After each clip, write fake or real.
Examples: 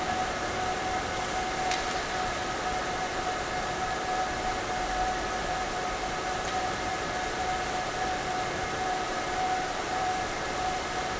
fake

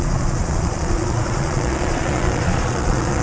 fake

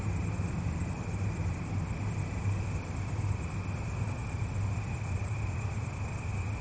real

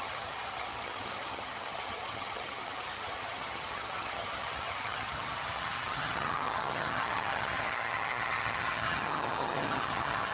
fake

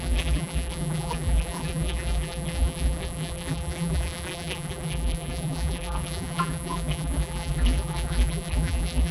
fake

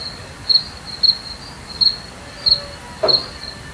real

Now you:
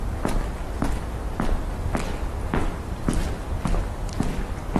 real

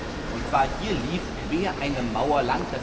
real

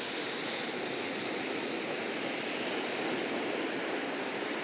real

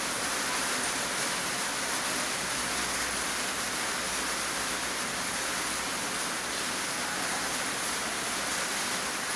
real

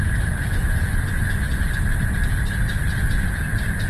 real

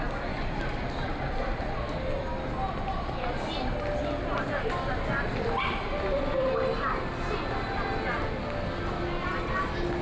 real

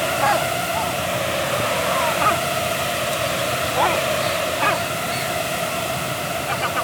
real